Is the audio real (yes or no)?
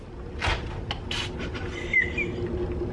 yes